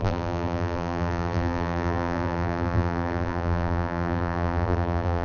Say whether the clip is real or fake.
fake